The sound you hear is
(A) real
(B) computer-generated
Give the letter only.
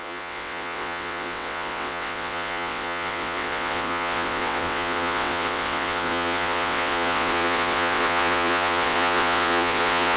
B